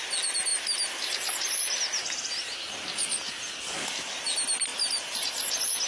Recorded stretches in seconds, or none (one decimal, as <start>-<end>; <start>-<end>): 0.0-5.9

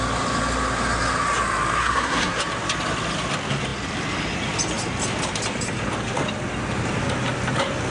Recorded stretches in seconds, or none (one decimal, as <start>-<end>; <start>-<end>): 0.0-1.8; 2.4-7.9

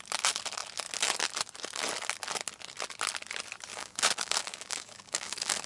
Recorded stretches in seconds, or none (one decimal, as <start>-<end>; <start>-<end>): 0.0-3.7